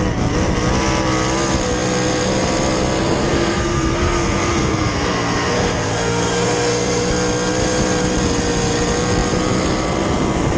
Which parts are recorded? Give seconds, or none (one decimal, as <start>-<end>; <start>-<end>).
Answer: 0.0-3.2; 7.1-10.6